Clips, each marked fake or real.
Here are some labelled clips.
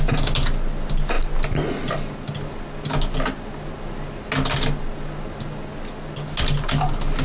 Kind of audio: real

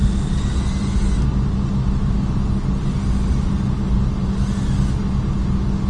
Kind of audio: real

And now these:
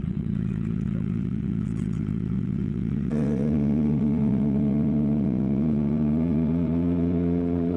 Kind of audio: fake